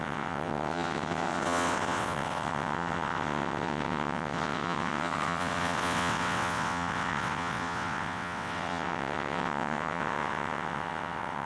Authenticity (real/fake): fake